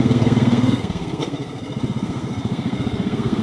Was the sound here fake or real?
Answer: fake